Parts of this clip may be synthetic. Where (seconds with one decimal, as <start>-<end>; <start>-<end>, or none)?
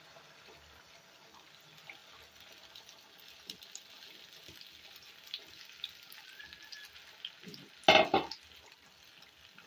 none